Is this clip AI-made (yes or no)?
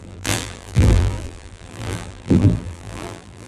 yes